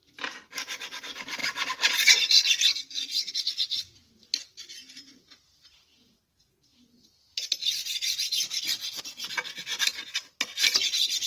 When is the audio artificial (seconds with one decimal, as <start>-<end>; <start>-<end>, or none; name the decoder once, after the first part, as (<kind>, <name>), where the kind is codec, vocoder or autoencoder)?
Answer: none